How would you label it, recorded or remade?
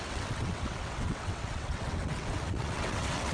remade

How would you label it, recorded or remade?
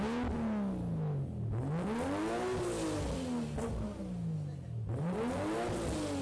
recorded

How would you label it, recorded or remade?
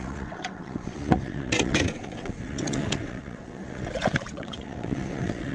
remade